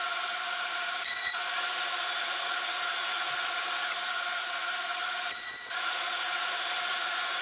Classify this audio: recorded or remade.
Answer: remade